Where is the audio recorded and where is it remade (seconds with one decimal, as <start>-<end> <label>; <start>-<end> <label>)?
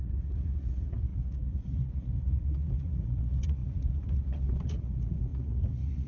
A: 0.0-6.1 remade